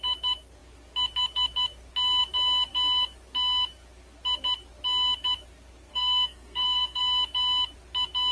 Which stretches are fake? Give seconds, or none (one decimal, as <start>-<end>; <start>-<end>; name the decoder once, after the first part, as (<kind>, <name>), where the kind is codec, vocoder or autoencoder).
5.9-7.0 (codec, SNAC)